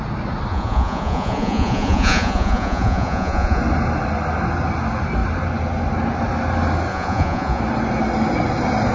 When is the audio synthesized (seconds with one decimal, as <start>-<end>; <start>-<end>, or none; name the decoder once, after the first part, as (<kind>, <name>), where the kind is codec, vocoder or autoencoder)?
0.5-3.6 (vocoder, Vocos); 6.9-7.6